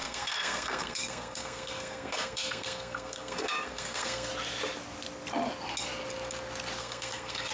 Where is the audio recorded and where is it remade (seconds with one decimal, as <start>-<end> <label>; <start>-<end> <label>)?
0.0-4.3 remade; 4.3-6.8 recorded; 6.8-7.5 remade